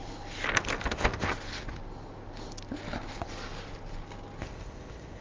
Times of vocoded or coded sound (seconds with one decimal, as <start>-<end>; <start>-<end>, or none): 0.9-1.3; 4.4-5.2